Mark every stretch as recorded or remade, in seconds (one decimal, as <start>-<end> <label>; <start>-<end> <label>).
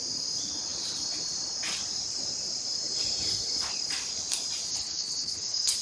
0.0-4.7 recorded; 4.7-5.8 remade